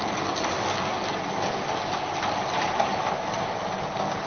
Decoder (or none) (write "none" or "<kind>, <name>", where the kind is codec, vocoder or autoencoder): none